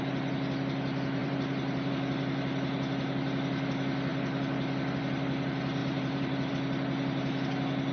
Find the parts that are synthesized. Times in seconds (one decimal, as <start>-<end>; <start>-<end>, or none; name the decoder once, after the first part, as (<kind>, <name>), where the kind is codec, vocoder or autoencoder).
1.2-1.9 (vocoder, BigVGAN v2); 5.8-6.5